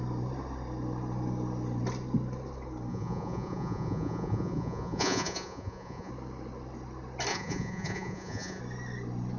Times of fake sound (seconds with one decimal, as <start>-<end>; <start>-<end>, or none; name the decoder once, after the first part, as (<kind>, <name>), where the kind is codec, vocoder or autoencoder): 2.9-6.1 (vocoder, Vocos); 7.3-8.6

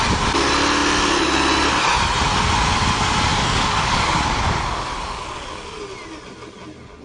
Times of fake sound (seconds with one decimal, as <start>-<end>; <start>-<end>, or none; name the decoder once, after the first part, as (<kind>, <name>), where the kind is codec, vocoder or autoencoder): 3.3-5.8 (codec, DAC)

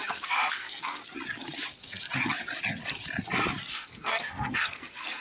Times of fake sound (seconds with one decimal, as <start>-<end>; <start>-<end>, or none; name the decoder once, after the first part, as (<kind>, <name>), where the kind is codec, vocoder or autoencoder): 0.0-1.0 (codec, SNAC); 3.7-5.2

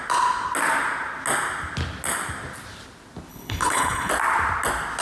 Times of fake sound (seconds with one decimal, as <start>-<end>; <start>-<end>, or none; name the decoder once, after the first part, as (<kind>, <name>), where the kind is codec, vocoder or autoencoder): 3.3-4.1 (codec, HILCodec)

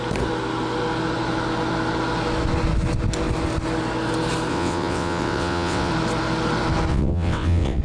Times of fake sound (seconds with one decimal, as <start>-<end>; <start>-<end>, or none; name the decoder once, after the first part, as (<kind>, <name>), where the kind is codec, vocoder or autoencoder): 4.5-5.9 (vocoder, WaveNeXt); 6.9-7.8